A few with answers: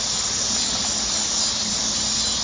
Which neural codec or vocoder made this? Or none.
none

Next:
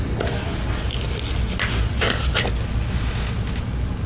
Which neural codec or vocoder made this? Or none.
none